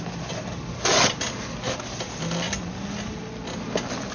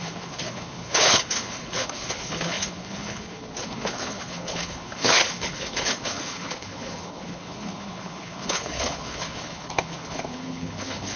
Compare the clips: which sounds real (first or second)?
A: first